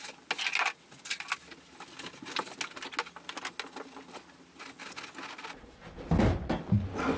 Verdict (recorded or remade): recorded